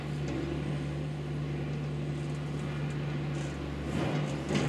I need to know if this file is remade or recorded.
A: recorded